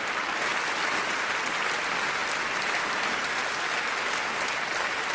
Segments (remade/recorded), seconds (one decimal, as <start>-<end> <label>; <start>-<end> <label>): 0.0-5.1 recorded